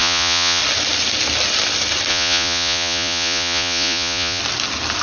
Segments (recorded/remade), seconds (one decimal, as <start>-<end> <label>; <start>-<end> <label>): 0.0-0.6 remade; 0.6-2.1 recorded; 2.1-4.4 remade; 4.4-5.0 recorded